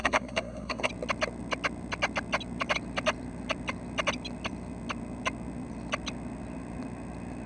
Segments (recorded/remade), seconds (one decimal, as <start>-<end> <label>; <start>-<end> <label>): 0.0-0.9 remade; 0.9-7.5 recorded